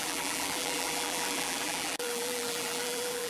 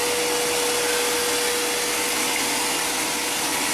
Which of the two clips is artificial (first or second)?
first